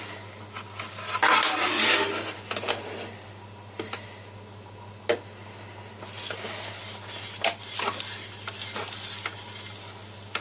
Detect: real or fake real